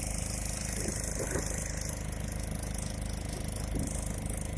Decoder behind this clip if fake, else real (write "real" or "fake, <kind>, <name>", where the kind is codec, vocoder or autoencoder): real